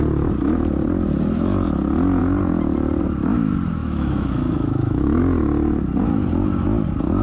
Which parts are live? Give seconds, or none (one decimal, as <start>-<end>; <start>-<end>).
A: 0.0-3.8; 5.2-7.2